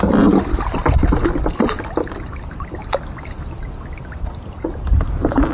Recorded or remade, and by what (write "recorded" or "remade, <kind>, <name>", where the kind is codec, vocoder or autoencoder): recorded